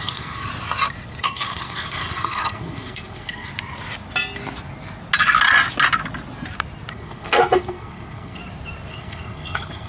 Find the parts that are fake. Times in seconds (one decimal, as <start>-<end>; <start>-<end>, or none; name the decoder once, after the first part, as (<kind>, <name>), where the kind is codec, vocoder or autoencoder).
0.0-0.5 (codec, SNAC); 1.2-3.5; 6.9-8.4; 8.9-9.9